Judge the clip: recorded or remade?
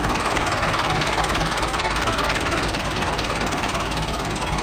remade